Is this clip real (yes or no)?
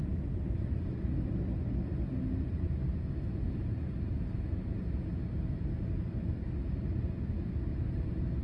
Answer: yes